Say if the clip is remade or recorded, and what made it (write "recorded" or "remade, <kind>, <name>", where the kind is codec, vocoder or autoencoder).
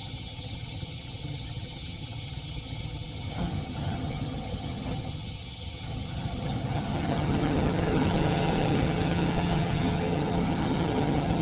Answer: remade, vocoder, HiFi-GAN